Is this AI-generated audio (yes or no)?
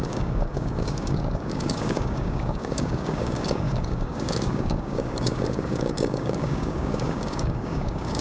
yes